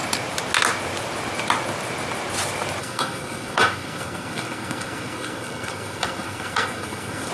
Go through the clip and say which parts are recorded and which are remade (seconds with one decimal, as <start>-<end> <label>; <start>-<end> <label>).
0.0-2.8 recorded; 2.8-7.3 remade